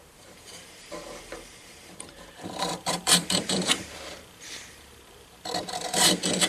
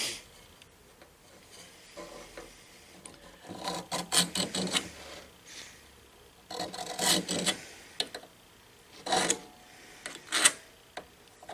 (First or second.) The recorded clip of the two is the second